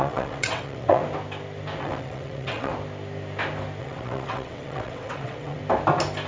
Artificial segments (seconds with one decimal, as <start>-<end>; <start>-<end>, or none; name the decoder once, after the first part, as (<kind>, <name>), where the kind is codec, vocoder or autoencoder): 0.0-1.0 (vocoder, WaveNeXt); 1.8-2.7; 3.8-5.6

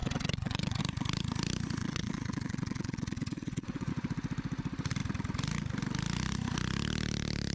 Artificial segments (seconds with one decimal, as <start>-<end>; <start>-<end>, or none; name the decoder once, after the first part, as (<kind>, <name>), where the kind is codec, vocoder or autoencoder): 0.0-0.8 (vocoder, WaveNeXt); 1.8-3.9

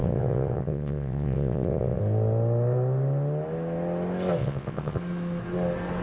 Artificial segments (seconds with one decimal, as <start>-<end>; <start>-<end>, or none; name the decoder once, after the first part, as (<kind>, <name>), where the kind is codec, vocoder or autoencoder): 0.0-2.0 (vocoder, WaveNeXt); 4.4-5.0

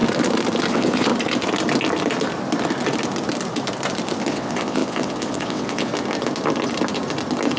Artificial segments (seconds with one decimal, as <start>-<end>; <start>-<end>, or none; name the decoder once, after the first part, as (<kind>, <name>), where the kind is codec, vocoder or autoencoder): 0.7-1.1 (vocoder, WaveNeXt); 4.3-5.9

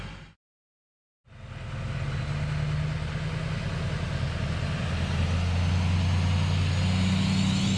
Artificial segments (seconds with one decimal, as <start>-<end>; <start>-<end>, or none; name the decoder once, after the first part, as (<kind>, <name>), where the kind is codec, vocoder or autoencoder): none